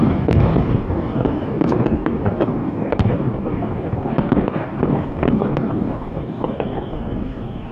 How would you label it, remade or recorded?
remade